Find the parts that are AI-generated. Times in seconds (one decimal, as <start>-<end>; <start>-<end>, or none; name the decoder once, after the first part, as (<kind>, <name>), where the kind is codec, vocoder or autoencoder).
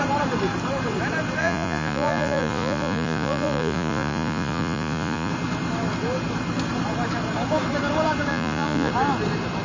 1.4-5.3 (vocoder, Vocos); 8.3-8.9